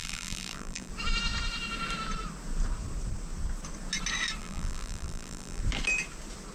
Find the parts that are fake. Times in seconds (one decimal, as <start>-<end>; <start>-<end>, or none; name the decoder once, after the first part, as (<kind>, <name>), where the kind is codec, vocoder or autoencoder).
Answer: 0.0-0.9 (vocoder, BigVGAN v2); 4.4-5.6